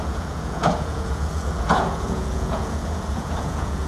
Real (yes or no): no